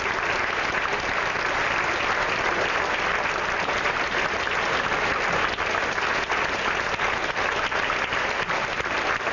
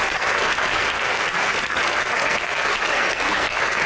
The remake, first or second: second